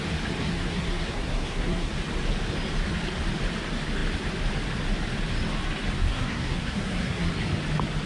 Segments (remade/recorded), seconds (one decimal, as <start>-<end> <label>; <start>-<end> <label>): 0.0-0.4 recorded; 0.4-1.9 remade; 1.9-6.1 recorded; 6.1-7.3 remade; 7.3-8.1 recorded